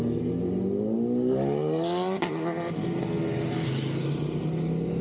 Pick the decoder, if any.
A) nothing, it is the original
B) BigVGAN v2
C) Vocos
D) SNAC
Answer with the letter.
A